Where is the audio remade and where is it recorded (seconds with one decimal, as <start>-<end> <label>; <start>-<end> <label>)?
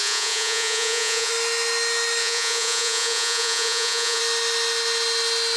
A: 0.0-1.3 remade; 1.3-2.2 recorded; 2.2-4.2 remade; 4.2-5.6 recorded